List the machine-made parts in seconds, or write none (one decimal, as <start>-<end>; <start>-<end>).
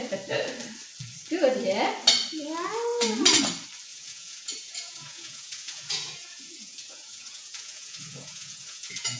3.9-9.2